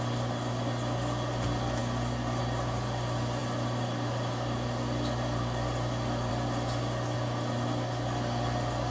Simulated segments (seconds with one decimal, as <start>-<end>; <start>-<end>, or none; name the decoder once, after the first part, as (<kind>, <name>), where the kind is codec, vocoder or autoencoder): none

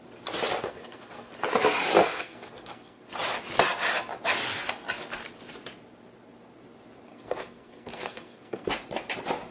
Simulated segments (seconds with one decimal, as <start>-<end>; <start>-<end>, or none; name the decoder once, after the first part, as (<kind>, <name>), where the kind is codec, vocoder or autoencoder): 0.6-1.3 (codec, SNAC); 2.0-3.0; 7.1-8.7

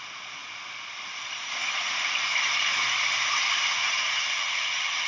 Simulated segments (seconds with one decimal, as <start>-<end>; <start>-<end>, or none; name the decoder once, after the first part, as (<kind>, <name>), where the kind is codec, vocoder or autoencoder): 3.8-5.1 (vocoder, HiFi-GAN)

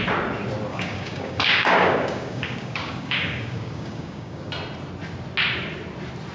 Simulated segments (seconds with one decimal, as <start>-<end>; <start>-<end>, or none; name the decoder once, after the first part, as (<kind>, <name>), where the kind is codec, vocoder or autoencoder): 0.7-4.5 (codec, DAC)

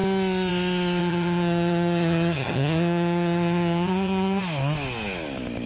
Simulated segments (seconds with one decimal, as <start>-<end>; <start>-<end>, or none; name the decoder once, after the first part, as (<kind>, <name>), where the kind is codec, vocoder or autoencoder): 1.0-4.4 (vocoder, HiFi-GAN)

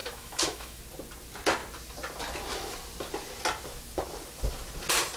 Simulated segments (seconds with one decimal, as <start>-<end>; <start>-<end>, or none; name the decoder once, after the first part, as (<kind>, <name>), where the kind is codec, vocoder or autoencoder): 0.0-0.8 (autoencoder, DAC-VAE)

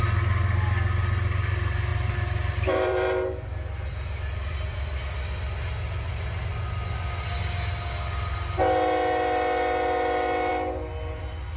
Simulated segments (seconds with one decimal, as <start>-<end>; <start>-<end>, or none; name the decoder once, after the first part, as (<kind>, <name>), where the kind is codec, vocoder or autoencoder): 1.9-5.0 (vocoder, BigVGAN v2)